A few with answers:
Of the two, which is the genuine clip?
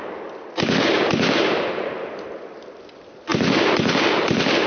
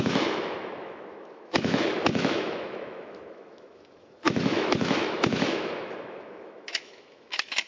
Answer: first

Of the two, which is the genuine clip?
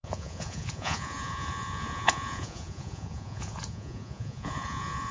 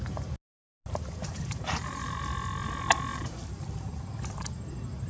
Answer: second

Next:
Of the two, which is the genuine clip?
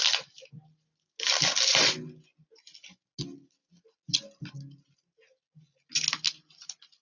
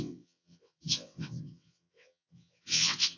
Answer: first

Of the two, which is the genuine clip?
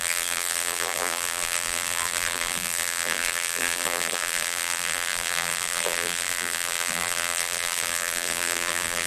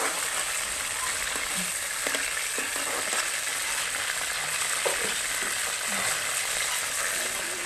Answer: second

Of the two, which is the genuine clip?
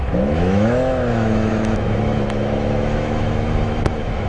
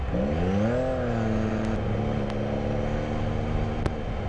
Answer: second